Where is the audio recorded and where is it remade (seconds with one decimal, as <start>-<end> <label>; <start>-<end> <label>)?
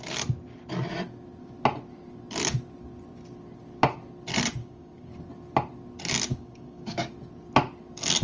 0.0-4.6 recorded; 4.6-5.1 remade; 5.1-6.3 recorded; 6.3-7.1 remade; 7.1-8.2 recorded